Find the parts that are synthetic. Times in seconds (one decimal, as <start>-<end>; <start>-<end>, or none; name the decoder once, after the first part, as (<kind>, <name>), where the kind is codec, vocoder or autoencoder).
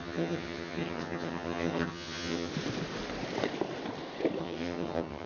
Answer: 0.0-2.5 (vocoder, HiFi-GAN); 4.4-5.3